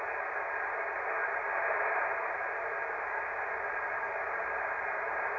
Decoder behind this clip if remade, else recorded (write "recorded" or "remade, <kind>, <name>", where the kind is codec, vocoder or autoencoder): recorded